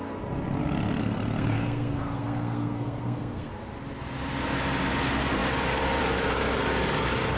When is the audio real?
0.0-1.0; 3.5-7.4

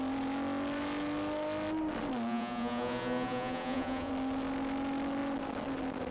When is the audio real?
0.0-2.3; 4.1-6.1

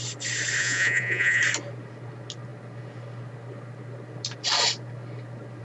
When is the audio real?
0.0-0.6; 1.4-5.6